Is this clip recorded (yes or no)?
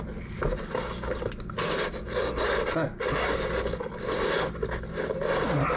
yes